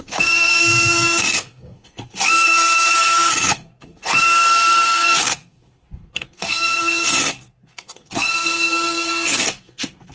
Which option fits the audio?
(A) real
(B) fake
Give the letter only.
B